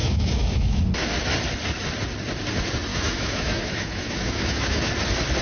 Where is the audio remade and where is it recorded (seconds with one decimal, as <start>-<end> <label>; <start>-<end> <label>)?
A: 0.0-0.8 remade; 0.8-2.9 recorded; 2.9-4.9 remade; 4.9-5.4 recorded